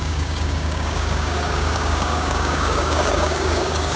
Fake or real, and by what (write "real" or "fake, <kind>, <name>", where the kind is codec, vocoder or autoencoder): fake, codec, DAC